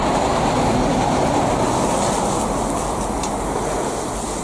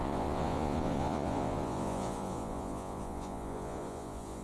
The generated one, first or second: second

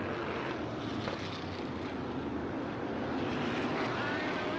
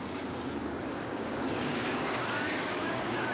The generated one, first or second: second